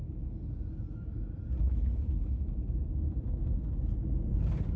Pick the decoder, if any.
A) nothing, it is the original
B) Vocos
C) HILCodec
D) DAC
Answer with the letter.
A